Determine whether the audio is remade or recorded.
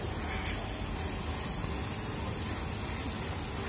recorded